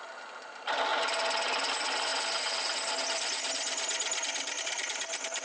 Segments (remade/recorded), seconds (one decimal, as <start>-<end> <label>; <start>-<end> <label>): 0.0-5.4 recorded